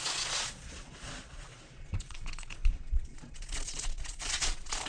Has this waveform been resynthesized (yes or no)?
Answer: yes